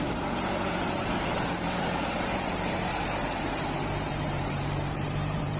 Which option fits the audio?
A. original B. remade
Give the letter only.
B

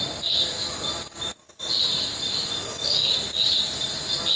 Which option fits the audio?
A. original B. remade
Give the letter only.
A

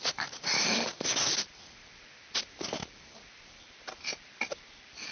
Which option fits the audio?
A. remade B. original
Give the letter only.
B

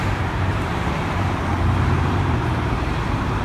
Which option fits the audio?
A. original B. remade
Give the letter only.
B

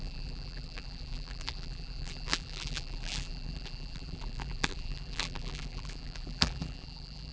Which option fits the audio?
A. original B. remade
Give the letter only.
B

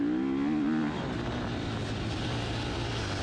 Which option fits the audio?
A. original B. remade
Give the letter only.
A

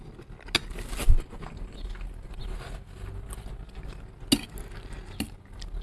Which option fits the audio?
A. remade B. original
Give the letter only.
B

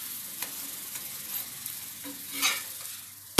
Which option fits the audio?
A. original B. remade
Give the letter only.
A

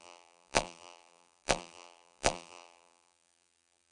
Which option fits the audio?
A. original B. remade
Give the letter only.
B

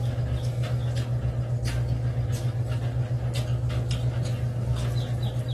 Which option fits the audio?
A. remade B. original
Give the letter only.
B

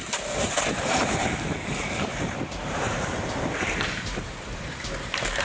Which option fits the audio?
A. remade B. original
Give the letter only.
A